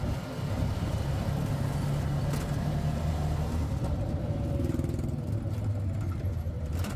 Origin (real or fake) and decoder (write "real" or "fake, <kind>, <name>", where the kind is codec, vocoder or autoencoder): real